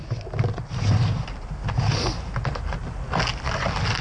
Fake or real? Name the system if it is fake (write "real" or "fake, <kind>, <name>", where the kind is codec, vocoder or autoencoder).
real